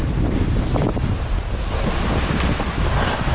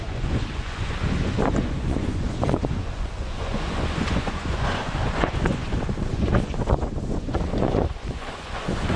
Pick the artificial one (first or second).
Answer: second